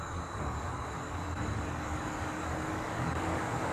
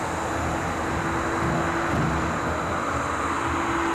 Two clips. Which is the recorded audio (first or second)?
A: second